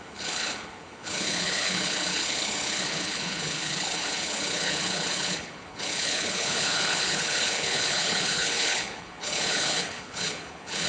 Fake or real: fake